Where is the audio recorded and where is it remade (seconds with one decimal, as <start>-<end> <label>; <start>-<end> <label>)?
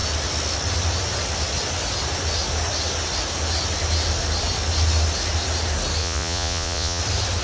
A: 0.0-6.0 recorded; 6.0-7.0 remade; 7.0-7.4 recorded